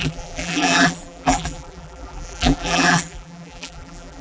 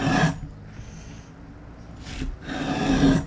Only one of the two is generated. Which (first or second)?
first